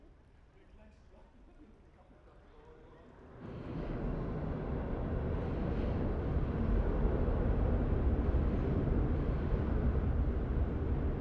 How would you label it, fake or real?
real